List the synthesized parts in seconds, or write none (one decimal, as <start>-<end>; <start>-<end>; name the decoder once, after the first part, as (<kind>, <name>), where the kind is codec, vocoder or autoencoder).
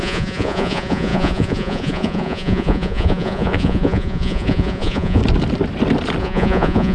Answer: 0.0-5.2 (vocoder, Vocos); 6.2-6.9